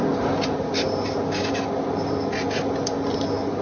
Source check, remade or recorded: recorded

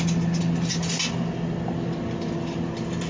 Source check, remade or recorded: recorded